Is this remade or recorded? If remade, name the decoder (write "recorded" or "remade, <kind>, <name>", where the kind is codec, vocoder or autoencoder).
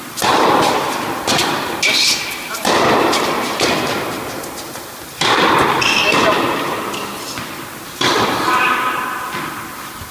recorded